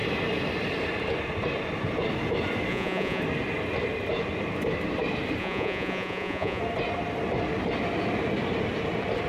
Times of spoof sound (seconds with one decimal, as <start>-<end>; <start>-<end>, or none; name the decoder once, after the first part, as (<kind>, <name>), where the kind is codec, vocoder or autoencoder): 2.7-3.2 (vocoder, Vocos); 5.4-6.6